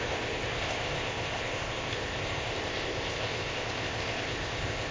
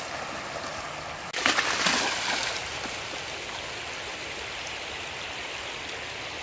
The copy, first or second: first